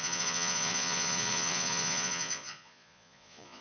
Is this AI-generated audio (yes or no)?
yes